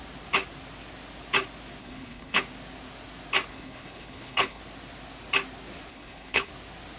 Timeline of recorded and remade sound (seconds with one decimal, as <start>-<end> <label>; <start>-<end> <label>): 0.0-1.8 recorded; 1.8-2.4 remade; 2.4-3.5 recorded; 3.5-4.6 remade; 4.6-5.9 recorded; 5.9-6.5 remade; 6.5-7.0 recorded

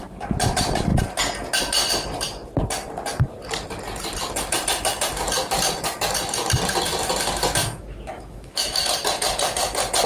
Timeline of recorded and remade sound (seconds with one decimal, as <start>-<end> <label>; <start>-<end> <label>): 0.0-7.6 recorded; 7.6-8.8 remade; 8.8-10.1 recorded